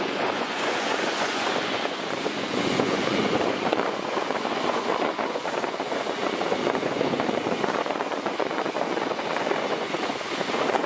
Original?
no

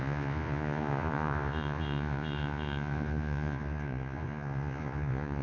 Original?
no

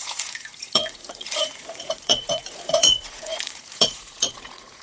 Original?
no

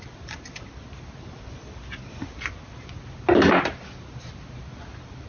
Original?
yes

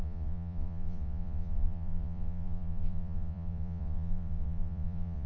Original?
no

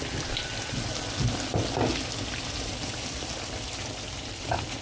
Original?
yes